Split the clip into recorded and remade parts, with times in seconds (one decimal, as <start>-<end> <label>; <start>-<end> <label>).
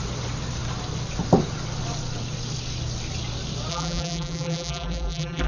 0.0-3.7 recorded; 3.7-5.5 remade